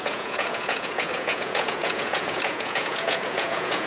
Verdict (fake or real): fake